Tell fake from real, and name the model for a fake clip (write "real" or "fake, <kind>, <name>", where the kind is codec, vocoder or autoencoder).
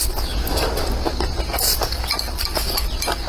real